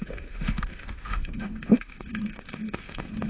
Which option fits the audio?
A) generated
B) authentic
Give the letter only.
A